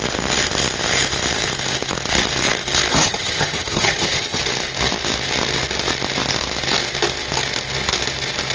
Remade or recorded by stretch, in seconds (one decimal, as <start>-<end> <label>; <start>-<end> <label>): 0.0-2.9 recorded; 2.9-4.4 remade; 4.4-8.5 recorded